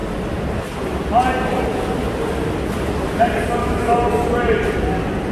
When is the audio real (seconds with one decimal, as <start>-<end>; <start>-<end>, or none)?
0.0-3.6; 4.1-5.3